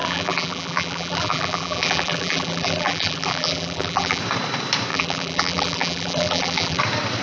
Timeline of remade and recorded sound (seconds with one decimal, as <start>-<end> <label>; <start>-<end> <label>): 0.0-4.2 remade; 4.2-4.9 recorded; 4.9-6.8 remade; 6.8-7.2 recorded